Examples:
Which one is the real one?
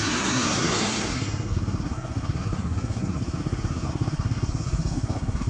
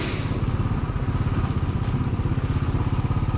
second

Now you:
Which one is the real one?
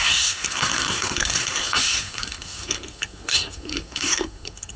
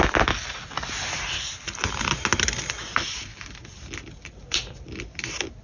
second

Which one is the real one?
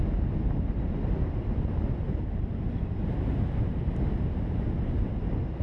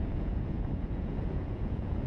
first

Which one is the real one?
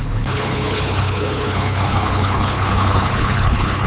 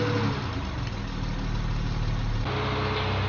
second